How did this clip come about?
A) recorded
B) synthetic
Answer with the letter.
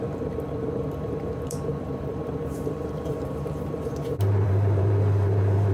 B